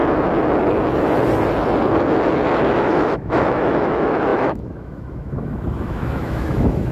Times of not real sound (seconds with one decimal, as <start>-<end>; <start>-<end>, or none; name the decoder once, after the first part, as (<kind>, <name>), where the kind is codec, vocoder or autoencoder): 2.6-6.9 (autoencoder, DAC-VAE)